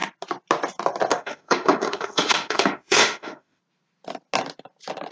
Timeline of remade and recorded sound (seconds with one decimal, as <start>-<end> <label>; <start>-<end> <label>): 0.0-1.1 recorded; 1.1-3.6 remade; 3.6-5.1 recorded